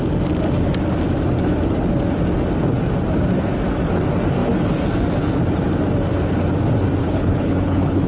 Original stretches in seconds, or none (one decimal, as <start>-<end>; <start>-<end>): 0.0-7.0